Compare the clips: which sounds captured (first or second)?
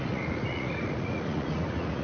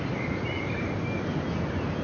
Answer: second